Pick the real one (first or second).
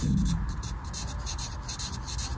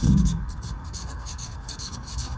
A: first